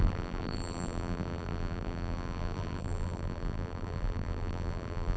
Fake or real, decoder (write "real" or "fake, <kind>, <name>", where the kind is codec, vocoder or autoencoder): fake, vocoder, BigVGAN v2